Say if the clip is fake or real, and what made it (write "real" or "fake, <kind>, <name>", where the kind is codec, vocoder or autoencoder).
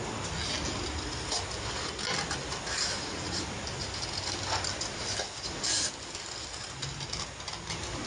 real